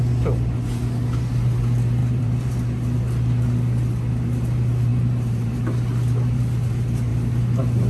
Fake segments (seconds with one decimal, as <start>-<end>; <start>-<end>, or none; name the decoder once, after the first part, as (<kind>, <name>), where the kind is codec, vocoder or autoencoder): 2.0-2.5 (vocoder, BigVGAN v2); 4.9-6.4